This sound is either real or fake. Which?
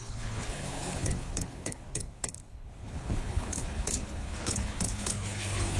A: fake